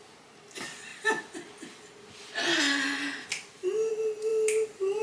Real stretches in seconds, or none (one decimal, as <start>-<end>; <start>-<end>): 0.0-5.0